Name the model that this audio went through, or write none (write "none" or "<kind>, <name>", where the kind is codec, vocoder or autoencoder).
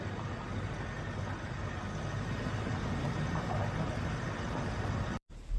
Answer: none